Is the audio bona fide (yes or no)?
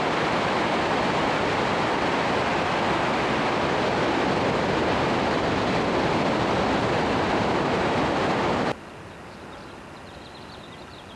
yes